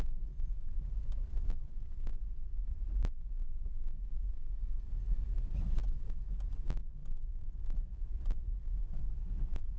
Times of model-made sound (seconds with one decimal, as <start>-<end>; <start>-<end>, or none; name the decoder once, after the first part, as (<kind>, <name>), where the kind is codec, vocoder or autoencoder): 2.5-5.4 (vocoder, BigVGAN v2); 7.0-9.8